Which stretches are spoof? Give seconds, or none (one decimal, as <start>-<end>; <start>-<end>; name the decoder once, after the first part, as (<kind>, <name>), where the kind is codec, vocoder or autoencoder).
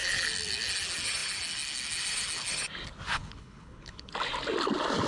3.1-4.1 (codec, HILCodec)